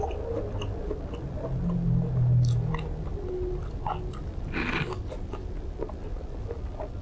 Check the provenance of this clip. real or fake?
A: real